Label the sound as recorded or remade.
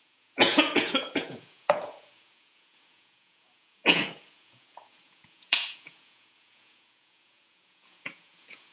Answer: remade